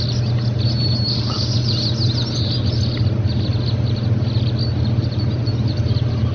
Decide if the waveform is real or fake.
real